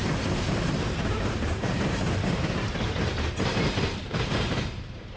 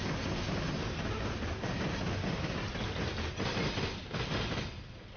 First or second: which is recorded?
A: second